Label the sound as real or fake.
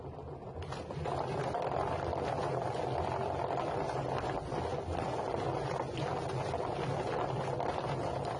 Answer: real